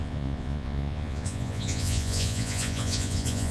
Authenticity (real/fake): fake